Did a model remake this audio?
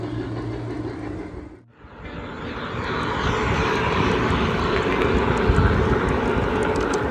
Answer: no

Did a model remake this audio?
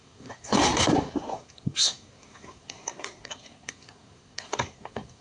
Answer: yes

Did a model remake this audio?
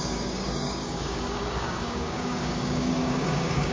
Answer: yes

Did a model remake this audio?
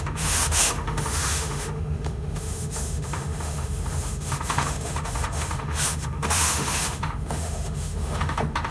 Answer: yes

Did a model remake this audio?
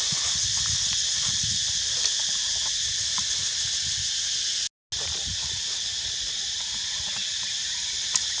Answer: no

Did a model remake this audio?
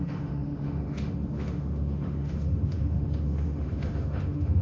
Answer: yes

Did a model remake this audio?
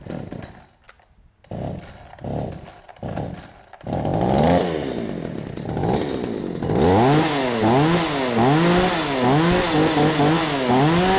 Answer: no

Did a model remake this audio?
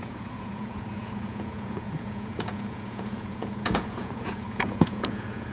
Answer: yes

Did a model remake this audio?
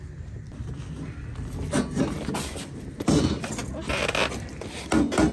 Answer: no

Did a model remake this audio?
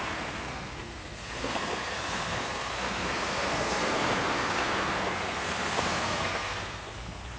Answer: yes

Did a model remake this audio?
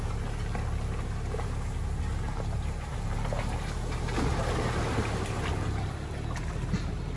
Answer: no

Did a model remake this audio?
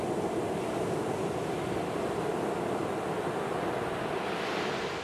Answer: no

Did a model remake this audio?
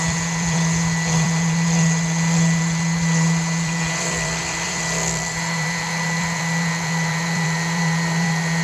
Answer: yes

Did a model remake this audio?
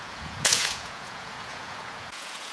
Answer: yes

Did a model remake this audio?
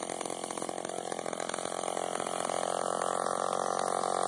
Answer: no